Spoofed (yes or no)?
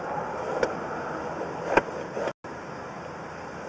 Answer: no